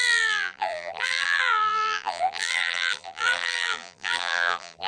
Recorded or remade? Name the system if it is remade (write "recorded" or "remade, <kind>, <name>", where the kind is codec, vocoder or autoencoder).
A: remade, vocoder, BigVGAN v2